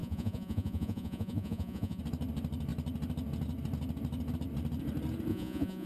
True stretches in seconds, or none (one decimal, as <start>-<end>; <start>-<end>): 2.0-5.3